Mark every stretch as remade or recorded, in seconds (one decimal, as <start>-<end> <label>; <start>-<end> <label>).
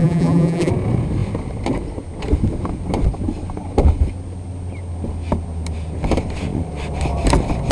0.0-0.7 remade; 0.7-7.7 recorded